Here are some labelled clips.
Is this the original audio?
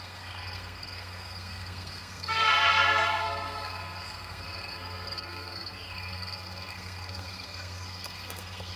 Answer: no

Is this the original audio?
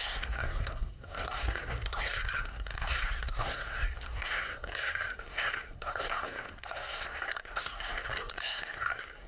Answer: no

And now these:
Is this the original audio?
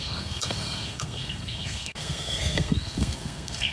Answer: no